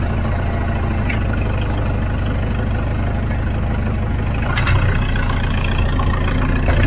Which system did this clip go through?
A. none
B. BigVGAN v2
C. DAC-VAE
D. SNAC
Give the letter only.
A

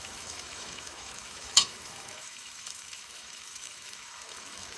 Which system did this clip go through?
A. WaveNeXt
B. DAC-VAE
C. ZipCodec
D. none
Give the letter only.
B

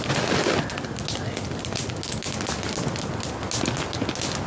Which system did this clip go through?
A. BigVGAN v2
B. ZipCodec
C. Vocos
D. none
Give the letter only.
D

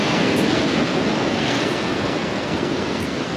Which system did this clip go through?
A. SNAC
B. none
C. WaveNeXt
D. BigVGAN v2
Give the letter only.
A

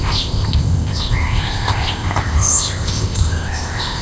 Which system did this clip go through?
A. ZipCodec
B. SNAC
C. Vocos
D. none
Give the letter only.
A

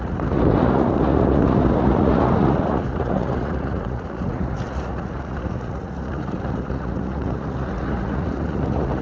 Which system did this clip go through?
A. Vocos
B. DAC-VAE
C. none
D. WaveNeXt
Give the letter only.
A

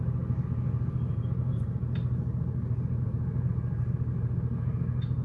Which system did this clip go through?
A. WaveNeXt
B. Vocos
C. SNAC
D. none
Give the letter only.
D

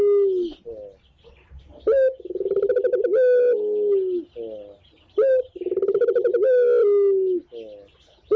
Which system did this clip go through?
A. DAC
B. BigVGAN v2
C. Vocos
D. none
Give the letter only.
D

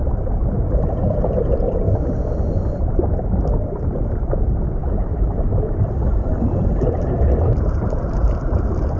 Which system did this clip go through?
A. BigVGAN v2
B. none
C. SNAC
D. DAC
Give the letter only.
A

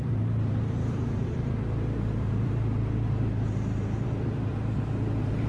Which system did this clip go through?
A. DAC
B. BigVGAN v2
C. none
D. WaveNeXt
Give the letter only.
B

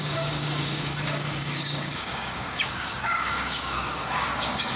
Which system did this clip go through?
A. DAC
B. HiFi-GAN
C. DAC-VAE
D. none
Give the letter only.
A